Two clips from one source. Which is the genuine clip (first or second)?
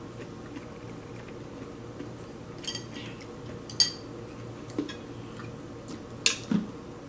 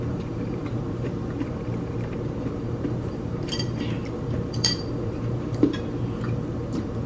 first